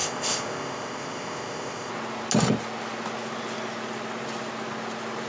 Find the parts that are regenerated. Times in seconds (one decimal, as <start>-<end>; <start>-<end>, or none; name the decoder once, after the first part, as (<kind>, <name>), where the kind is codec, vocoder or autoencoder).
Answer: 0.0-1.9 (codec, ZipCodec)